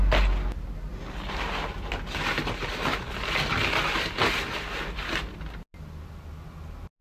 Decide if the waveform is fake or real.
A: real